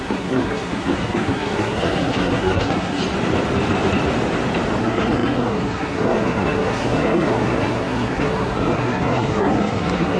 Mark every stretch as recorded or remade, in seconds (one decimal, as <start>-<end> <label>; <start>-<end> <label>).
0.0-3.0 remade; 3.0-4.8 recorded; 4.8-10.2 remade